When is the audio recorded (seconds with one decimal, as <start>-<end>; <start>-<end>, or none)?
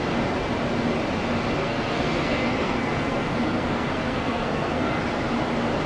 0.0-1.6; 5.0-5.9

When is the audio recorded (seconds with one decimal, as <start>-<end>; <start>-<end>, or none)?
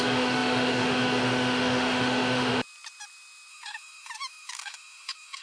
2.5-3.5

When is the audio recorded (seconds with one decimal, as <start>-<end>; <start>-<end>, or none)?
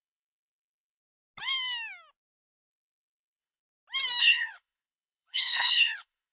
1.0-2.7; 3.6-4.2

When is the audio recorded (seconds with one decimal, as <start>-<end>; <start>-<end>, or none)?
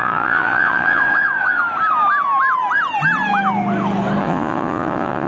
1.6-4.2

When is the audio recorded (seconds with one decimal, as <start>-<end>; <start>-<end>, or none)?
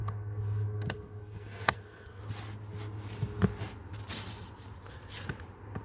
2.2-5.8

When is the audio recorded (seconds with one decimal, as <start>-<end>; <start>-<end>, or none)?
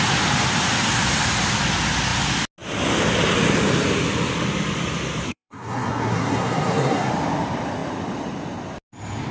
0.0-5.2; 7.1-9.3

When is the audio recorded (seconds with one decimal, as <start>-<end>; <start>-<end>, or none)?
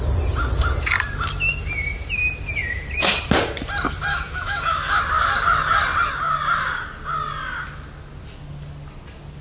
0.0-4.1; 5.0-9.4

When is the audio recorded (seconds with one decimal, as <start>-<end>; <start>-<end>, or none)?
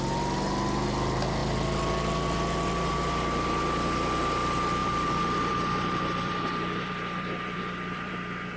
0.0-4.8; 8.1-8.6